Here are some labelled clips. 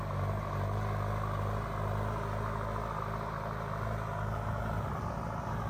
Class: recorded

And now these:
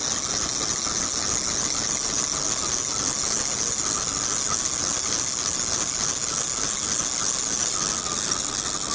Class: recorded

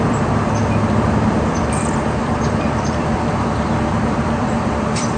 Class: remade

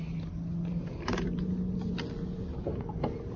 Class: recorded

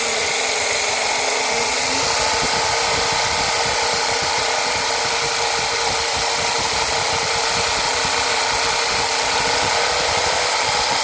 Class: recorded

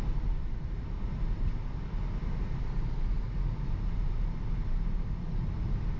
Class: recorded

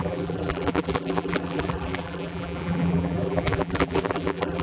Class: remade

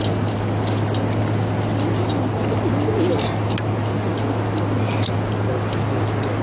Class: recorded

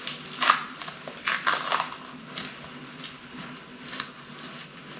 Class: recorded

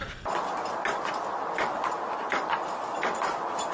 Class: recorded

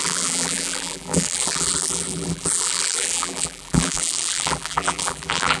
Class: remade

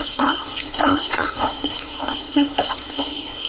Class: remade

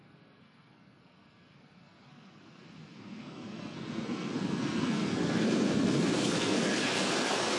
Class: remade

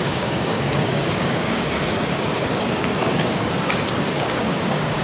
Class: remade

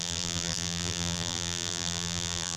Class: remade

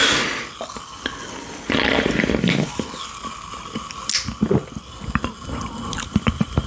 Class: recorded